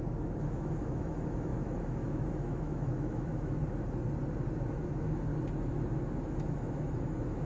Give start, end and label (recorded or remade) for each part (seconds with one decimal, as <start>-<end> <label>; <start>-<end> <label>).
0.0-3.6 remade; 3.6-4.7 recorded; 4.7-5.3 remade; 5.3-6.2 recorded; 6.2-7.5 remade